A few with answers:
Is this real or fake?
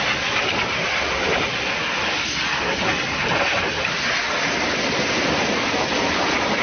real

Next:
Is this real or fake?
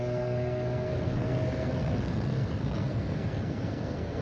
fake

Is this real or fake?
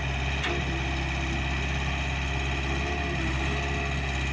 real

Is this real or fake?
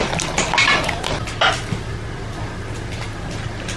real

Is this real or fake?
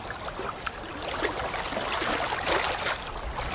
real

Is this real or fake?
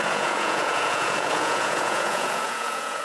fake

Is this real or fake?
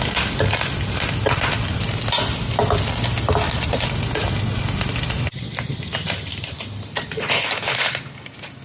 real